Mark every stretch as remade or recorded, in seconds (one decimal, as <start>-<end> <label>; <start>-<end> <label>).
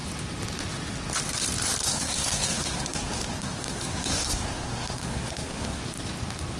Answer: 0.0-1.8 recorded; 1.8-5.8 remade; 5.8-6.6 recorded